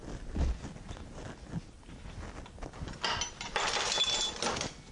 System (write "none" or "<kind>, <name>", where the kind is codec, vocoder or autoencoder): none